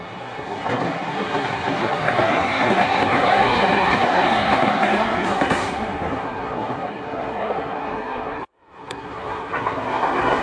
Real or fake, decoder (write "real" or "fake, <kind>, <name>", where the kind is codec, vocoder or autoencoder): fake, codec, SNAC